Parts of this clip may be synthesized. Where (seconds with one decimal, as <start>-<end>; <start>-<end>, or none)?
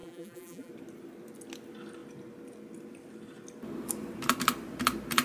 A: 0.0-0.7